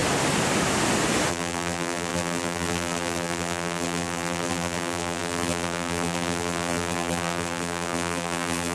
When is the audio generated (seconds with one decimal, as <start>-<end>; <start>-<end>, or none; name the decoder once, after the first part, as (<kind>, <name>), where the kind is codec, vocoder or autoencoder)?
1.3-8.7 (vocoder, BigVGAN v2)